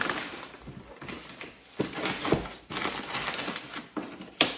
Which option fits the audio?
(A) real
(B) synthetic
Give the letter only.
A